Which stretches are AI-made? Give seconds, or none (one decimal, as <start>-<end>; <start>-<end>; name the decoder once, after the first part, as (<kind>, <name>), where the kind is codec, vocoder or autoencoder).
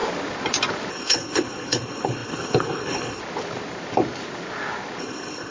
0.9-3.2 (codec, HILCodec); 5.0-5.5